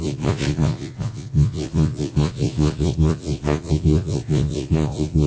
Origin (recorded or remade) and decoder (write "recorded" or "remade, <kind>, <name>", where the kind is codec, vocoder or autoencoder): remade, vocoder, Vocos